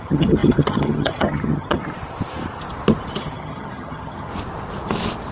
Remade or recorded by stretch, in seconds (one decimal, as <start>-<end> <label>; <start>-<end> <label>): 0.0-1.8 remade; 1.8-3.2 recorded; 3.2-4.3 remade; 4.3-5.3 recorded